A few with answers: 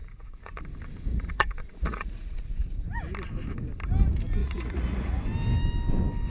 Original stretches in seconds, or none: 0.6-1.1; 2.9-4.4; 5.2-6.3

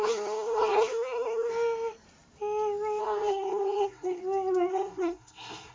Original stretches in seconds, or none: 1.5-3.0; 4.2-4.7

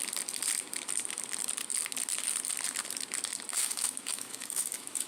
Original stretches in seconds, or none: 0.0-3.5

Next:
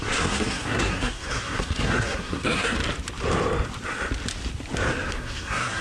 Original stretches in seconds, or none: 2.8-5.1